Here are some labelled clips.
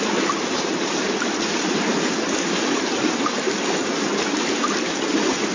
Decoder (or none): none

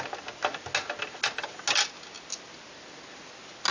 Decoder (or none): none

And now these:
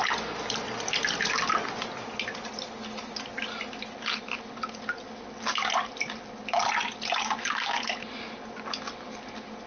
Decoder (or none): none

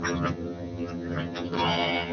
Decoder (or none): vocoder, HiFi-GAN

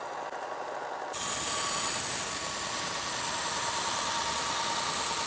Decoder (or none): none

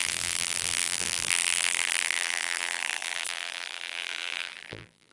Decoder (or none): vocoder, BigVGAN v2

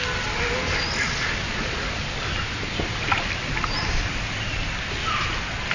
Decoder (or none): none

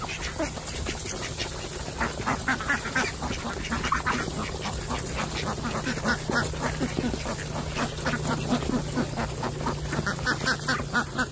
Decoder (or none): none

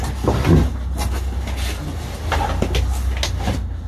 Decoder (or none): none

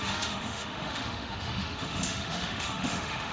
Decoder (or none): autoencoder, DAC-VAE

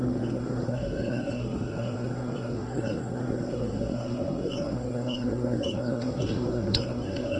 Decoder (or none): codec, SNAC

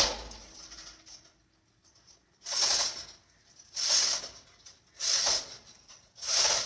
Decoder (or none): none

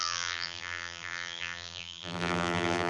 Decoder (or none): vocoder, BigVGAN v2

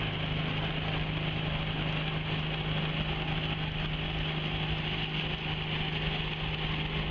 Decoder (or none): none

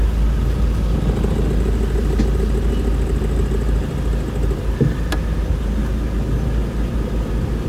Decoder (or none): none